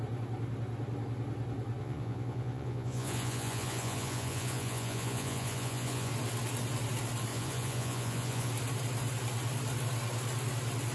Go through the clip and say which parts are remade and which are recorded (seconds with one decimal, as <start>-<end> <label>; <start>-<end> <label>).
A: 0.0-1.8 recorded; 1.8-6.1 remade; 6.1-7.3 recorded; 7.3-8.5 remade; 8.5-10.9 recorded